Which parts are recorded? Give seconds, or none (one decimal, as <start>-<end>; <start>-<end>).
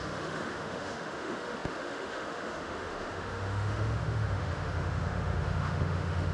none